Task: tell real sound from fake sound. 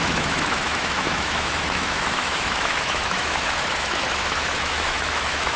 fake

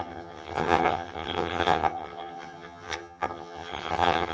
fake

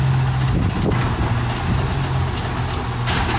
real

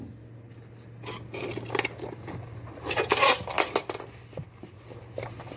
real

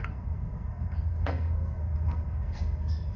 fake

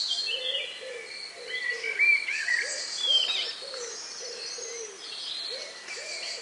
real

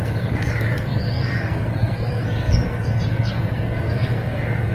fake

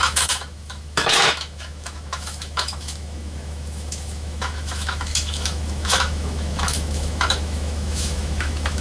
fake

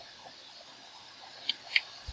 real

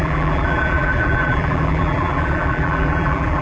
fake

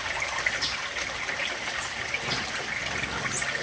real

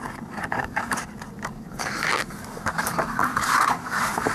fake